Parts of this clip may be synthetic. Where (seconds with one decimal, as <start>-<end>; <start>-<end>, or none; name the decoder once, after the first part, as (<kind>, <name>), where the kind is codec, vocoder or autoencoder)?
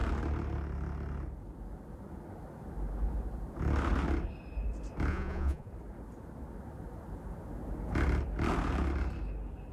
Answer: 5.1-5.7 (vocoder, Vocos)